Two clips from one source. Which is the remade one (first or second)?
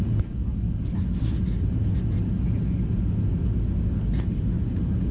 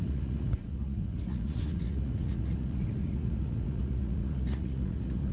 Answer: second